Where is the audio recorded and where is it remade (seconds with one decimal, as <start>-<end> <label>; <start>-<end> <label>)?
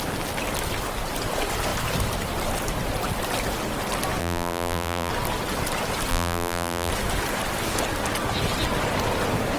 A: 0.0-4.2 recorded; 4.2-5.1 remade; 5.1-6.1 recorded; 6.1-6.9 remade; 6.9-9.6 recorded